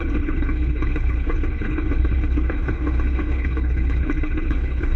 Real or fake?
fake